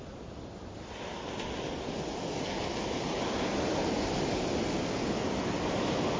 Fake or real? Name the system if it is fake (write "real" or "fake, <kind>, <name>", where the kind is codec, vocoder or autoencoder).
real